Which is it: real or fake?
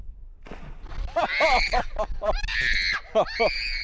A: real